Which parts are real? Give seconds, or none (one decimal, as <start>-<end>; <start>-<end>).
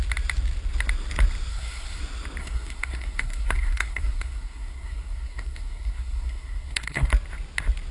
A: 0.0-1.5; 2.0-2.4; 7.1-7.9